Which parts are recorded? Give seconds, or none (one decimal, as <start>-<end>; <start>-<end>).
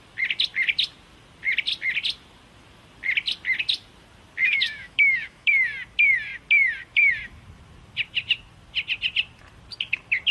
0.0-4.4; 5.5-10.3